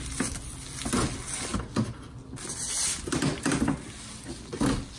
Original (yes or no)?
yes